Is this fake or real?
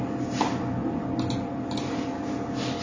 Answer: real